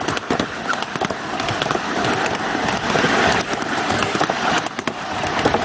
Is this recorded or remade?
recorded